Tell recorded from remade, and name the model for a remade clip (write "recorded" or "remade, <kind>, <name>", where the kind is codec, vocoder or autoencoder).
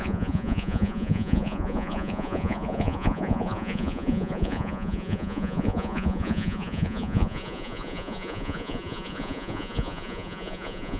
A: remade, vocoder, Vocos